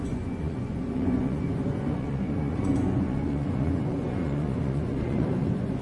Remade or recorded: remade